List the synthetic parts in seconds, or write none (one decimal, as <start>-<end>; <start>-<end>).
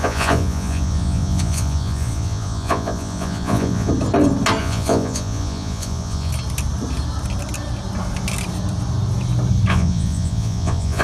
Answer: 0.0-3.9; 4.6-6.3; 9.7-11.0